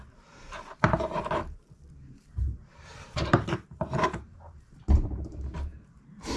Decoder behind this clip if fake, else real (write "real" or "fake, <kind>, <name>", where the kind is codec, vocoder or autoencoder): fake, vocoder, BigVGAN v2